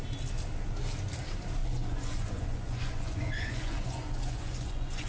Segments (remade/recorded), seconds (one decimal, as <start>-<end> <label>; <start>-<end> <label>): 0.0-1.6 recorded; 1.6-5.1 remade